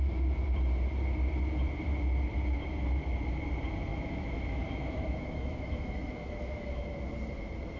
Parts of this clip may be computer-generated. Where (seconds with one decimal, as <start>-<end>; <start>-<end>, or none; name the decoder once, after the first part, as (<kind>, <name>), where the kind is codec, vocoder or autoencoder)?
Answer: 3.9-6.9 (autoencoder, DAC-VAE)